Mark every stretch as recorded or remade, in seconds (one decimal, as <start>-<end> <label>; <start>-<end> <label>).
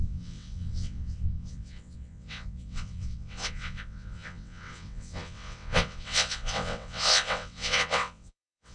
0.0-8.7 remade